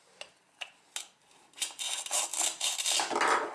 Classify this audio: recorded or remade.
recorded